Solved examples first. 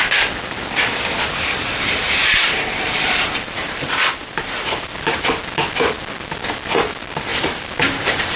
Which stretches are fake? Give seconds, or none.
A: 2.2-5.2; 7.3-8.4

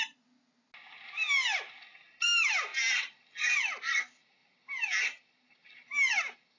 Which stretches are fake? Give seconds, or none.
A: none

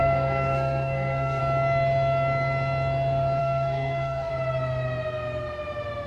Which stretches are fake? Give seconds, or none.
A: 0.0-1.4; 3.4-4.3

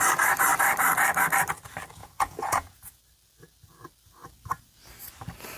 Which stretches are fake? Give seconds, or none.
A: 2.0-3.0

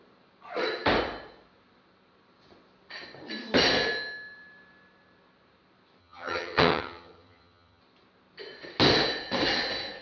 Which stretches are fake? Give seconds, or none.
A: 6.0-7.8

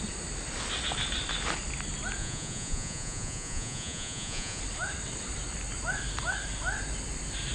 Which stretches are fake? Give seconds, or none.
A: 2.2-4.6

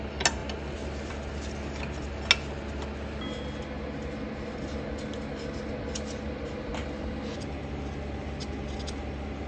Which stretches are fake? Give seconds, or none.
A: none